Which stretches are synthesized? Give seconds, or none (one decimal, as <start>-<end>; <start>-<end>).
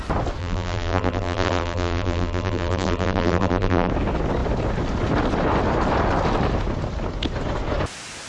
0.4-3.9